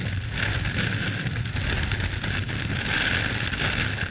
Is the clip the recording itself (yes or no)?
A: yes